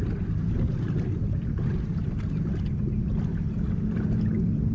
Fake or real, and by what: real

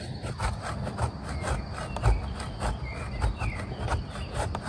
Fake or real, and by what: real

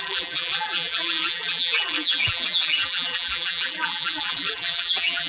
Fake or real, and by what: fake, vocoder, BigVGAN v2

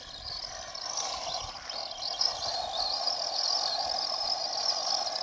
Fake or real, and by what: real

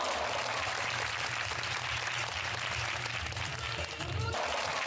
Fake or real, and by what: real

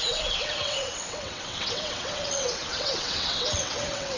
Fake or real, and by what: fake, vocoder, WaveNeXt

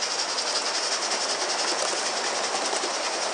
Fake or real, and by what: real